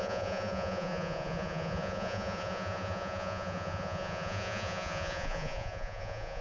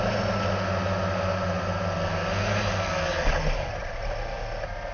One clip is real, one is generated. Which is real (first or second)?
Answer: second